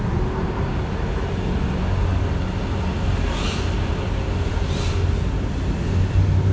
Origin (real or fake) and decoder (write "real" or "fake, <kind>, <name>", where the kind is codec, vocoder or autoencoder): real